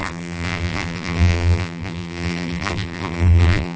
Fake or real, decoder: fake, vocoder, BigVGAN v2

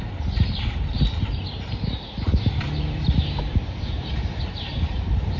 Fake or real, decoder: fake, vocoder, BigVGAN v2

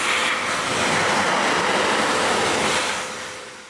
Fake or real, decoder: real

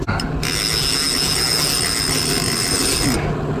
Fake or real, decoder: real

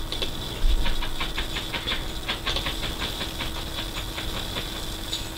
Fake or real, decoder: real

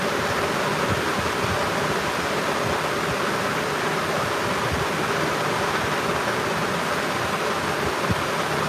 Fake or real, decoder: real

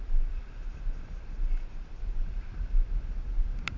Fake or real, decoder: fake, vocoder, BigVGAN v2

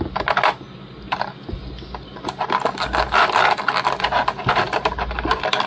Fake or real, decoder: real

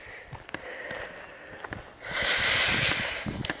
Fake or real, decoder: real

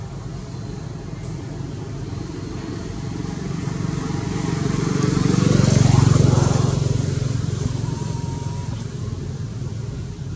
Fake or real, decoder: real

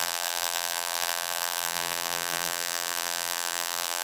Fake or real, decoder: fake, vocoder, BigVGAN v2